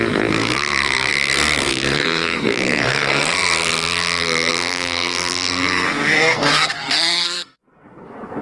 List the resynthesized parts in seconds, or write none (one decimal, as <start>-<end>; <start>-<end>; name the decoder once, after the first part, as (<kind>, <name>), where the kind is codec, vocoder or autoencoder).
0.0-8.4 (codec, SNAC)